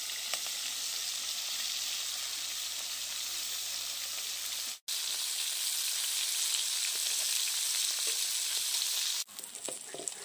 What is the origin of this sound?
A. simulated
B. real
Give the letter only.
B